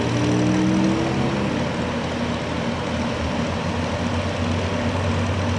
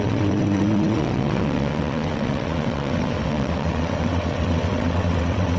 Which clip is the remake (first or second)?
second